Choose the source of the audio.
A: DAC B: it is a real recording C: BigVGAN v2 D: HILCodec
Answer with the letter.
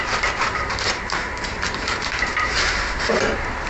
C